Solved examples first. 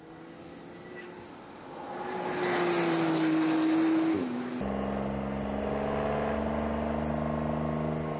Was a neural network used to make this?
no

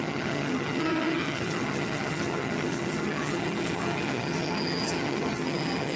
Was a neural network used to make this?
yes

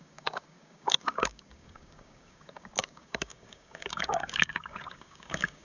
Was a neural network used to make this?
yes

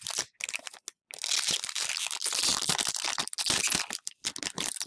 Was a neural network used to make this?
no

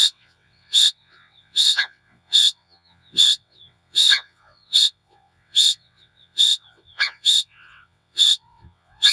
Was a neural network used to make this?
yes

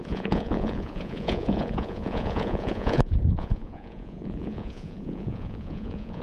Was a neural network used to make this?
yes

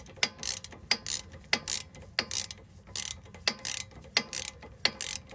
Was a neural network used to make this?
no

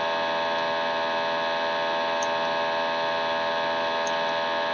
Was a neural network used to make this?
no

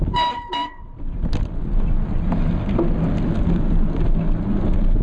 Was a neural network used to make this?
no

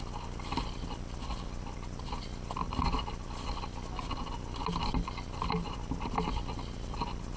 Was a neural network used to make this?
no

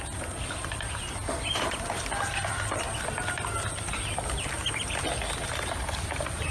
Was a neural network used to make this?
no